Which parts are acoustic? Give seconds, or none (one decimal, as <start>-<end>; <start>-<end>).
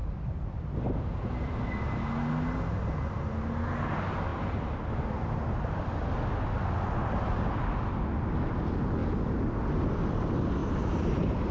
1.3-10.6